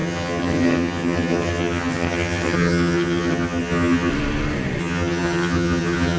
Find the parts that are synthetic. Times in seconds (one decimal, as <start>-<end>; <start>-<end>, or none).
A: 0.0-4.1; 4.8-6.2